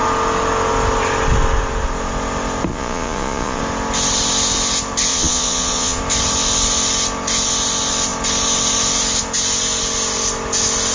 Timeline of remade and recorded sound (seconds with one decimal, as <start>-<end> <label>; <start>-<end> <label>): 0.0-2.7 recorded; 2.7-3.6 remade; 3.6-5.1 recorded; 5.1-6.0 remade; 6.0-10.9 recorded